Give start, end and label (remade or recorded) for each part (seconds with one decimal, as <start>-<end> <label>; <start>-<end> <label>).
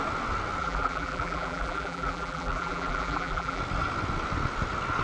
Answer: 0.0-0.6 recorded; 0.6-3.6 remade; 3.6-5.0 recorded